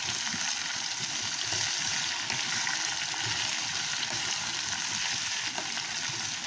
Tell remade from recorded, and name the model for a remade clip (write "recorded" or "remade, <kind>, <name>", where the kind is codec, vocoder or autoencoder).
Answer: recorded